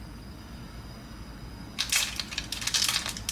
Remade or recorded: recorded